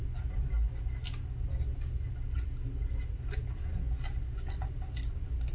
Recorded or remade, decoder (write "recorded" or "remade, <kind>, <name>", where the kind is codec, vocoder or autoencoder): recorded